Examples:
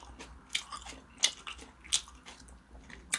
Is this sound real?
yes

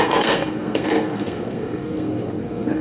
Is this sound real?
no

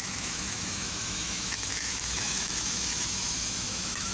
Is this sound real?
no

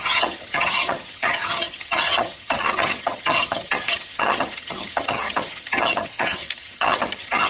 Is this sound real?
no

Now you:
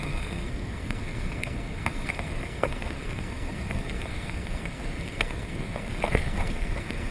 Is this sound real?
no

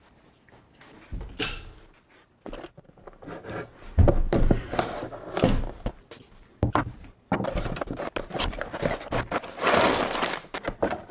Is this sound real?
yes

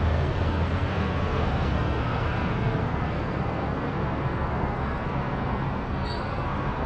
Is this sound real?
no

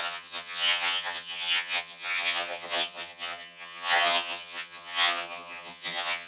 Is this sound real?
no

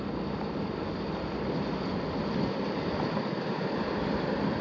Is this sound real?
yes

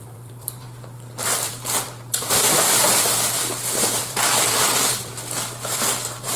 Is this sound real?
no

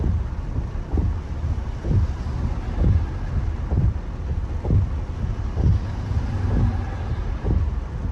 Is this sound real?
yes